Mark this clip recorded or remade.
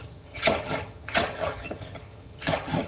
remade